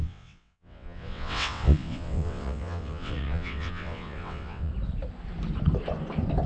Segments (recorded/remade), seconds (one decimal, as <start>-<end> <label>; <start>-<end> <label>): 0.0-4.7 remade; 4.7-6.5 recorded